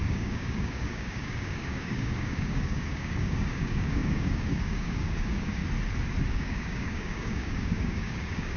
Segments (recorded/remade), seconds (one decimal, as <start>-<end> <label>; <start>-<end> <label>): 0.0-5.6 remade; 5.6-6.3 recorded; 6.3-8.6 remade